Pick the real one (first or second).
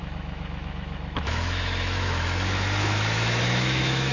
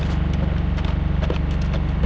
second